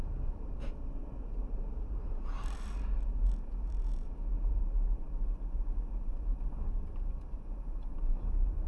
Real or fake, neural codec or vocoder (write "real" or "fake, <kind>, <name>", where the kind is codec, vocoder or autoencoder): fake, vocoder, BigVGAN v2